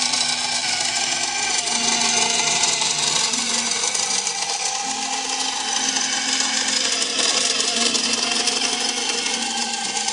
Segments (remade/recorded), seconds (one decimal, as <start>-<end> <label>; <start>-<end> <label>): 0.0-10.1 recorded